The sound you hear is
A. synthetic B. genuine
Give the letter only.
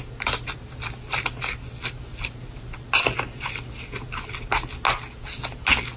B